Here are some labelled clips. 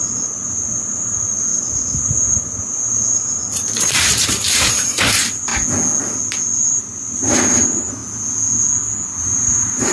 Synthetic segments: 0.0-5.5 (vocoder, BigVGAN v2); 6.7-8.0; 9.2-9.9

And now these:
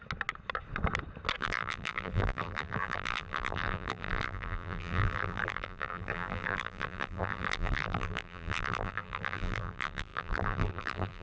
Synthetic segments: 1.4-11.2 (vocoder, BigVGAN v2)

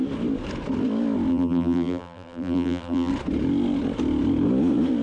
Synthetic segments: 1.3-3.1 (vocoder, BigVGAN v2)

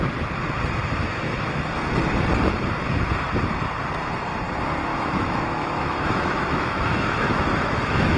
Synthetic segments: 1.0-1.6 (autoencoder, DAC-VAE); 4.9-8.2

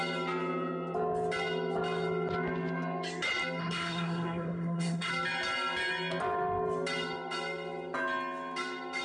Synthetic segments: 3.6-5.1 (codec, SNAC)

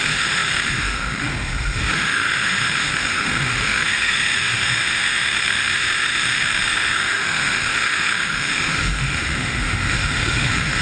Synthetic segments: 0.0-10.8 (autoencoder, DAC-VAE)

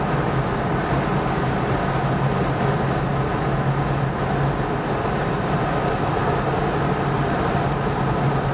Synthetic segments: none

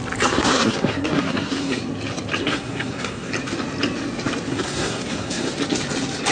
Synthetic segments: 0.4-1.8 (codec, SNAC); 2.4-3.3; 4.5-5.5